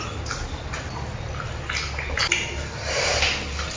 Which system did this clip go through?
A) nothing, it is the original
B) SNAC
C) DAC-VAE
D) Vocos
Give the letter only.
A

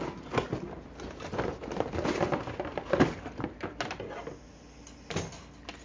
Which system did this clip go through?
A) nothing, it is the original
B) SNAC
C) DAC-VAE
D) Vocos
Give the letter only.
A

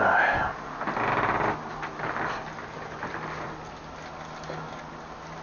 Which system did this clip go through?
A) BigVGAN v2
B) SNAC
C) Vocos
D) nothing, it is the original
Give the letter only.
D